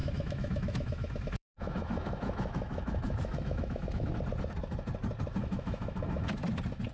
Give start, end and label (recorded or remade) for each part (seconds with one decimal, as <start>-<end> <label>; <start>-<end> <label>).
0.0-4.1 remade; 4.1-5.4 recorded; 5.4-6.3 remade; 6.3-6.9 recorded